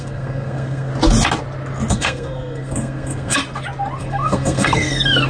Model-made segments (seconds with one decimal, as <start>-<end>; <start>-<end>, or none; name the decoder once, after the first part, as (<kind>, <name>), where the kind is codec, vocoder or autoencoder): 0.0-0.9 (codec, SNAC); 1.9-3.4; 4.0-5.3